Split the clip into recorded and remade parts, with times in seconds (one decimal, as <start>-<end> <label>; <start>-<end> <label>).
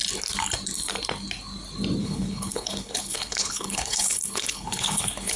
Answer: 0.0-2.0 recorded; 2.0-5.4 remade